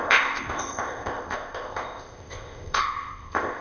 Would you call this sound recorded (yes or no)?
no